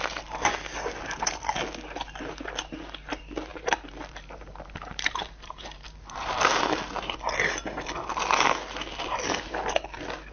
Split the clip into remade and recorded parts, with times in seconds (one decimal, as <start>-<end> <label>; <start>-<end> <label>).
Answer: 0.0-3.5 recorded; 3.5-6.6 remade; 6.6-10.3 recorded

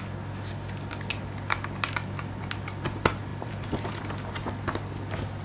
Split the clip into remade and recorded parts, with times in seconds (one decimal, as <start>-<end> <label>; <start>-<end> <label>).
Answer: 0.0-3.3 recorded; 3.3-3.9 remade; 3.9-5.4 recorded

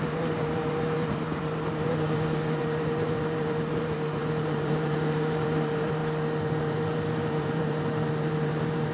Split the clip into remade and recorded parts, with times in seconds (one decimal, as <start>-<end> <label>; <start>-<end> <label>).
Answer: 0.0-6.0 remade; 6.0-6.6 recorded; 6.6-8.9 remade

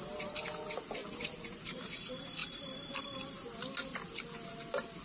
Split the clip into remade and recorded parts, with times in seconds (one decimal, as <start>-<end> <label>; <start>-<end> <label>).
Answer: 0.0-1.0 recorded; 1.0-1.8 remade; 1.8-2.4 recorded; 2.4-3.0 remade; 3.0-5.0 recorded

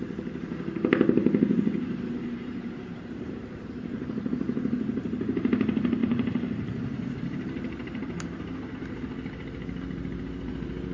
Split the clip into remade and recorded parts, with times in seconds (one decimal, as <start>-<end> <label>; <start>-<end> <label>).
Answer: 0.0-1.2 recorded; 1.2-4.3 remade; 4.3-6.0 recorded; 6.0-8.7 remade; 8.7-10.9 recorded

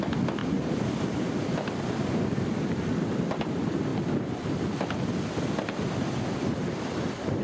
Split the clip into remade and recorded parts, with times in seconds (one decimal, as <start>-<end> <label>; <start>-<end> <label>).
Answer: 0.0-0.4 recorded; 0.4-3.3 remade; 3.3-7.4 recorded